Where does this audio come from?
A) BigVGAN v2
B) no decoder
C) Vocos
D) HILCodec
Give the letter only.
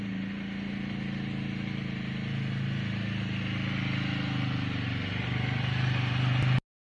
B